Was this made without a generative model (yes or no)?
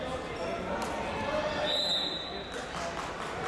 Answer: yes